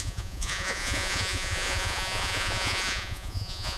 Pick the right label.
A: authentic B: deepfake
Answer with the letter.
B